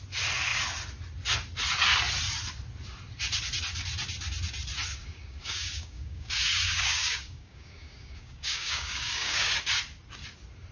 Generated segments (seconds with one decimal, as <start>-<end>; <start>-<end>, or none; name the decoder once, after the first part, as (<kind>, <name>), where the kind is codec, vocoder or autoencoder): 5.0-9.5 (codec, DAC)

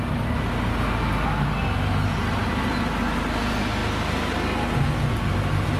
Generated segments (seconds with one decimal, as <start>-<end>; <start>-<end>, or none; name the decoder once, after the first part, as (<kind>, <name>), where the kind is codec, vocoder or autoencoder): none

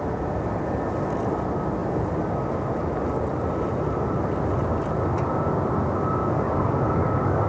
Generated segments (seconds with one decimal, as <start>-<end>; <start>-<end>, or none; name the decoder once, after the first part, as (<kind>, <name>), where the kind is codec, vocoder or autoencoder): 6.2-7.5 (codec, DAC)

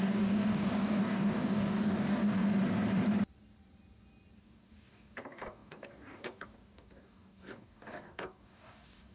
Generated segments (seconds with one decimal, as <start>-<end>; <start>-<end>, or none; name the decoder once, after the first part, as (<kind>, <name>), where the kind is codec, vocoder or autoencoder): 0.0-2.4 (codec, DAC); 4.4-9.1

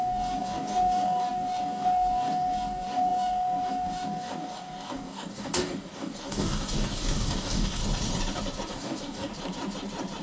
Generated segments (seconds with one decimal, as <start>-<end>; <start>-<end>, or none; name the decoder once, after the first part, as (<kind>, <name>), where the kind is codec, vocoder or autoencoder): 0.0-7.8 (codec, DAC); 8.7-9.3

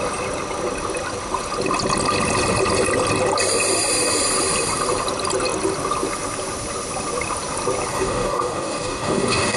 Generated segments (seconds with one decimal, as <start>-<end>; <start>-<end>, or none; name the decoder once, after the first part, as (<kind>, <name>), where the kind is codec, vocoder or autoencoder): 7.9-9.6 (codec, DAC)

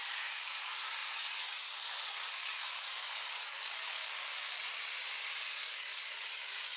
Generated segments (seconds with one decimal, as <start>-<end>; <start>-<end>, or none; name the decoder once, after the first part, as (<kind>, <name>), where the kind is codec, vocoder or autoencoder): 0.0-4.6 (codec, DAC); 5.4-6.8

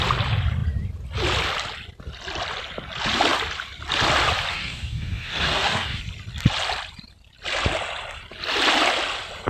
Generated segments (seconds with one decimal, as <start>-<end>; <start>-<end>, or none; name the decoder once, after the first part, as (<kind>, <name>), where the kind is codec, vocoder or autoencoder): 4.5-6.0 (codec, DAC)